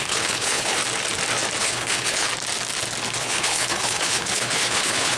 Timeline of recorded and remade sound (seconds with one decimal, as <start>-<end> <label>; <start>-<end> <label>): 0.0-0.8 remade; 0.8-1.6 recorded; 1.6-2.3 remade; 2.3-3.2 recorded; 3.2-5.2 remade